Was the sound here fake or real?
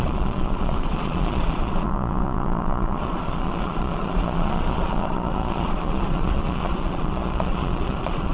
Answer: fake